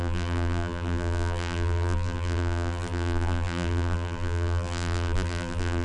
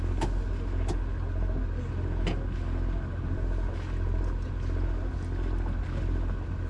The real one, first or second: second